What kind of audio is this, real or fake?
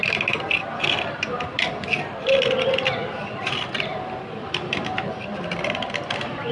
fake